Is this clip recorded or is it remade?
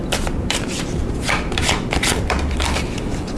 remade